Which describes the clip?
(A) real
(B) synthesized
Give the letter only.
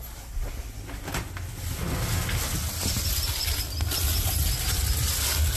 A